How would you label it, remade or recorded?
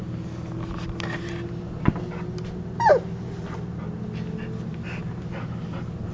recorded